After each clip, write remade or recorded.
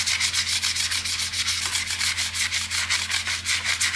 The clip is recorded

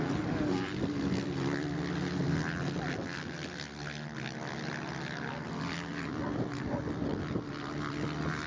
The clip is recorded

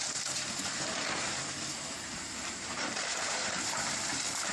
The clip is remade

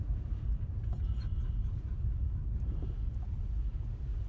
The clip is recorded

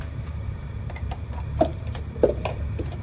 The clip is remade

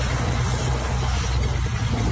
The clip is recorded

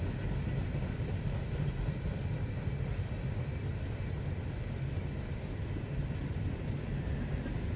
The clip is recorded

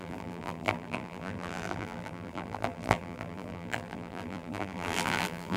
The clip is remade